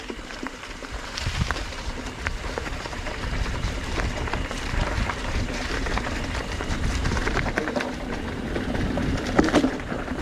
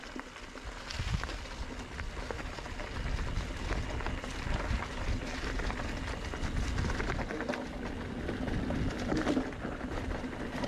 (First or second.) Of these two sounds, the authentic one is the second